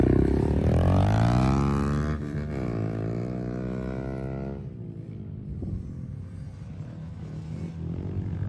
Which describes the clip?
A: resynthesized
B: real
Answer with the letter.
B